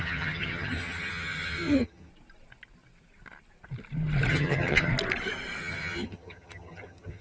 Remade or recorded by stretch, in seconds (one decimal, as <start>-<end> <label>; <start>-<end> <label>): 0.0-2.1 remade; 2.1-4.3 recorded; 4.3-4.9 remade; 4.9-5.6 recorded; 5.6-7.2 remade

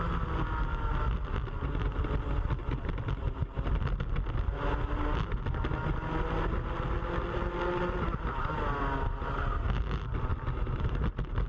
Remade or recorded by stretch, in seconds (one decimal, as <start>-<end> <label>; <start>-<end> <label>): 0.0-11.5 recorded

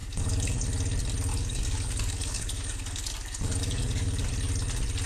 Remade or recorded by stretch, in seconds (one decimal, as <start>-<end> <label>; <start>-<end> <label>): 0.0-0.6 remade; 0.6-1.3 recorded; 1.3-4.3 remade; 4.3-5.1 recorded

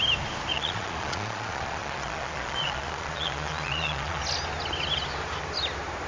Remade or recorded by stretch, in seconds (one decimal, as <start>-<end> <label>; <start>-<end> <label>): 0.0-0.5 recorded; 0.5-4.2 remade; 4.2-6.1 recorded

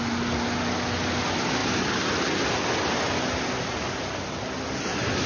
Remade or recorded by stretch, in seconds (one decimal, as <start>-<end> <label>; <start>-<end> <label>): 0.0-5.3 recorded

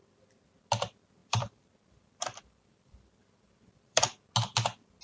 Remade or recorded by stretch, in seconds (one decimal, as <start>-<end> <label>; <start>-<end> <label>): 0.0-1.2 recorded; 1.2-4.0 remade; 4.0-5.0 recorded

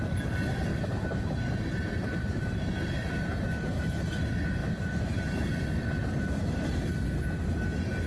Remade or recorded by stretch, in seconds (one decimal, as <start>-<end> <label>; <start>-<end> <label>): 0.0-0.7 recorded; 0.7-4.0 remade; 4.0-4.6 recorded; 4.6-6.9 remade; 6.9-8.1 recorded

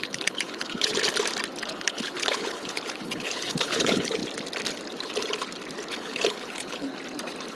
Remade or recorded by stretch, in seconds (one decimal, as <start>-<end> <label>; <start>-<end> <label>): 0.0-0.9 remade; 0.9-1.6 recorded; 1.6-4.2 remade; 4.2-5.9 recorded; 5.9-6.9 remade; 6.9-7.5 recorded